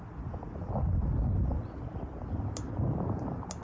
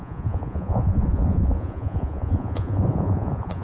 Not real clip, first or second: second